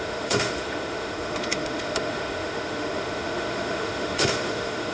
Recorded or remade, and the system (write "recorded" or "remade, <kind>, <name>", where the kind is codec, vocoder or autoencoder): remade, autoencoder, DAC-VAE